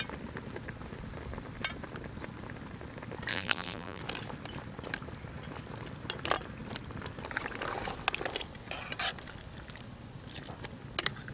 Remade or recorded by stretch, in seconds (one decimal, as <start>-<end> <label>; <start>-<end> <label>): 0.0-3.3 recorded; 3.3-4.0 remade; 4.0-11.3 recorded